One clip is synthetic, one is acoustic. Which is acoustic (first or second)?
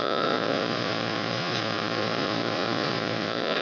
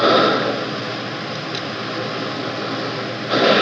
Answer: second